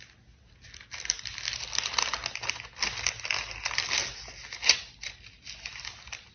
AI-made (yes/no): no